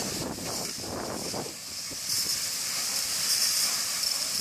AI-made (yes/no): no